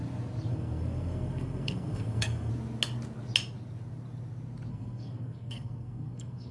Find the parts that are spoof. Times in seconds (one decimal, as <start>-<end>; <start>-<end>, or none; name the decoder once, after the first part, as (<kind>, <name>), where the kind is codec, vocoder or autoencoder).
0.5-2.5 (codec, SNAC); 4.7-6.5